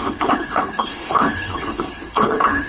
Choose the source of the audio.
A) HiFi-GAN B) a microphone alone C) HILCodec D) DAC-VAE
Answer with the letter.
C